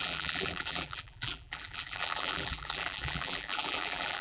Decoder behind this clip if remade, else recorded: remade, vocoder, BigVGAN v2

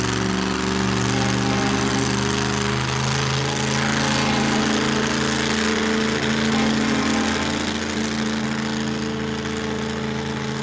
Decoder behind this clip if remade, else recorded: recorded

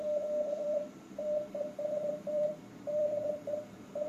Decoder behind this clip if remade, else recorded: remade, vocoder, BigVGAN v2